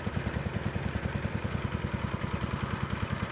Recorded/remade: recorded